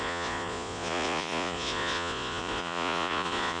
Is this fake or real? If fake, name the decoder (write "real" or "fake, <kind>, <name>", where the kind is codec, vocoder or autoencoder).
fake, vocoder, Vocos